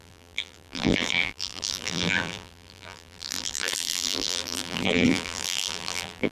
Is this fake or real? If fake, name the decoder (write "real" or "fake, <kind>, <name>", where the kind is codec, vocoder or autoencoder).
fake, vocoder, BigVGAN v2